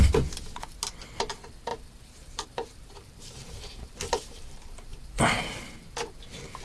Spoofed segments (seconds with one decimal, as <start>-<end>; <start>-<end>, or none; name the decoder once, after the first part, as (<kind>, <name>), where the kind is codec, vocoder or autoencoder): 1.7-5.7 (vocoder, BigVGAN v2)